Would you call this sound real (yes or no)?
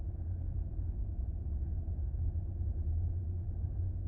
no